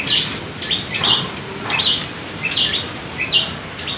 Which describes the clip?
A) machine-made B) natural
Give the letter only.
B